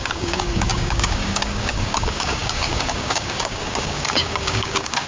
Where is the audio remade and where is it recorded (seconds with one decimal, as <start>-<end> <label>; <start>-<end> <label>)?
0.0-5.1 remade